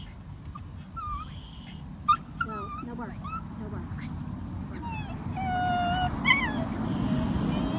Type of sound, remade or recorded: recorded